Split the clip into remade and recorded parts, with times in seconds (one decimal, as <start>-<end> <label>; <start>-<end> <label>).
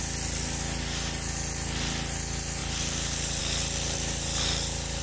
0.0-5.0 recorded